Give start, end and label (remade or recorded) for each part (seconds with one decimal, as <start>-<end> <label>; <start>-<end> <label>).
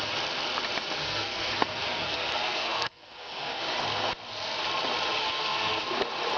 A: 0.0-1.0 recorded; 1.0-3.6 remade; 3.6-5.2 recorded; 5.2-5.8 remade; 5.8-6.4 recorded